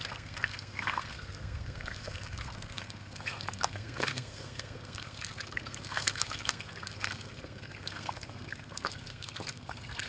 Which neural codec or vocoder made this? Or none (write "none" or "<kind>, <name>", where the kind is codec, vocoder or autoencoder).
codec, SNAC